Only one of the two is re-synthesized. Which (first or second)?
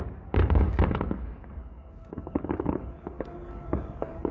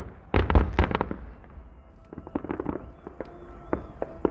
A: first